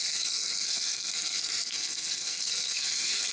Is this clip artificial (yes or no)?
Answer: yes